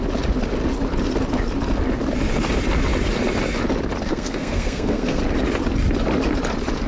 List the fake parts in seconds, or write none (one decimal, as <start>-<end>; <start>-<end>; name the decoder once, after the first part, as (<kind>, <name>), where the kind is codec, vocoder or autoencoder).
4.1-5.2 (codec, SNAC)